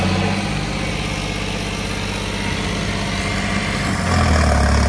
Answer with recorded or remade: recorded